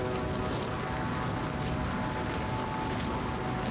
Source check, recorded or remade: recorded